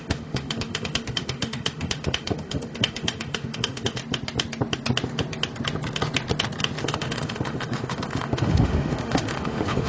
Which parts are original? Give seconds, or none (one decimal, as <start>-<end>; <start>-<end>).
4.0-6.8